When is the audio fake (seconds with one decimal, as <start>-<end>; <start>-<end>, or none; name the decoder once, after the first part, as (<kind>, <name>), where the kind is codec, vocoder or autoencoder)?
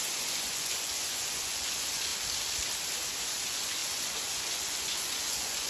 0.0-2.1 (vocoder, Vocos); 3.2-5.7